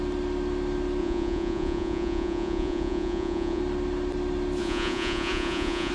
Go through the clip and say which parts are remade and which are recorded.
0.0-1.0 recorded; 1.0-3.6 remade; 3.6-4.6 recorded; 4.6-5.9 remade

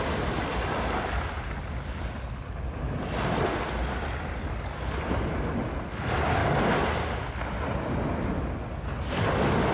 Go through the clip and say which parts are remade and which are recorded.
0.0-9.7 recorded